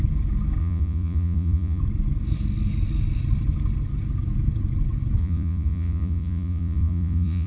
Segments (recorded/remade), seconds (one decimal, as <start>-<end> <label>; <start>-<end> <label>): 0.0-0.6 recorded; 0.6-1.8 remade; 1.8-5.2 recorded; 5.2-7.5 remade